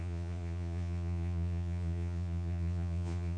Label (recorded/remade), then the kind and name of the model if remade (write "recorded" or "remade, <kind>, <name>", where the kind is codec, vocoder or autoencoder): remade, vocoder, Vocos